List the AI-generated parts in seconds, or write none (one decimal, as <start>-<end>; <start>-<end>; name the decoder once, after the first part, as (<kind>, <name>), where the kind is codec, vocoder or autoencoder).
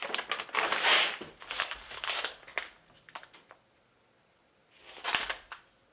none